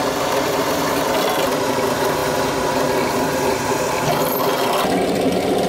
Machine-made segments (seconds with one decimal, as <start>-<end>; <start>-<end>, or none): 0.0-2.2; 3.7-4.5; 5.2-5.7